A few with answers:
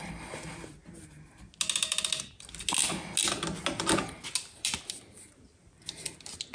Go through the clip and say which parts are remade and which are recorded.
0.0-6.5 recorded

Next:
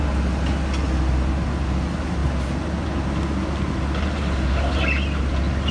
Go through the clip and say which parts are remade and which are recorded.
0.0-5.7 recorded

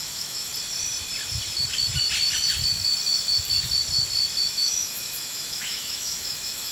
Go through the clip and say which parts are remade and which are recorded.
0.0-0.5 remade; 0.5-4.5 recorded; 4.5-6.7 remade

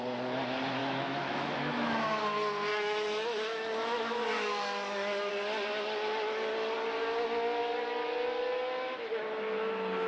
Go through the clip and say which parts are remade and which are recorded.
0.0-0.8 recorded; 0.8-2.2 remade; 2.2-2.7 recorded; 2.7-5.3 remade; 5.3-10.1 recorded

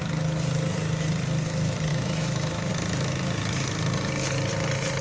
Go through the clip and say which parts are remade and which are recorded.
0.0-1.9 recorded; 1.9-2.7 remade; 2.7-5.0 recorded

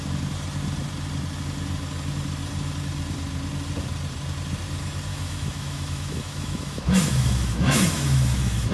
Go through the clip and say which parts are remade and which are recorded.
0.0-5.1 recorded; 5.1-8.7 remade

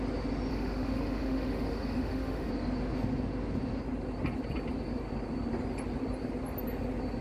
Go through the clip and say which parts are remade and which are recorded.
0.0-0.5 recorded; 0.5-2.5 remade; 2.5-7.2 recorded

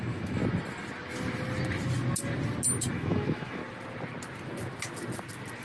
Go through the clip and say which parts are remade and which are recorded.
0.0-0.4 remade; 0.4-2.9 recorded; 2.9-3.6 remade; 3.6-5.6 recorded